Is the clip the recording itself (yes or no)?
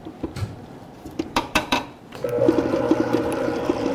no